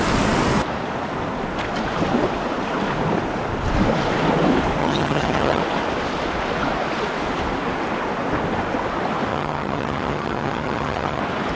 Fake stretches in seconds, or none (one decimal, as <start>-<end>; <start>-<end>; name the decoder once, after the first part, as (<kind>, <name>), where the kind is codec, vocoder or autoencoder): 4.8-5.6 (vocoder, HiFi-GAN); 9.3-11.2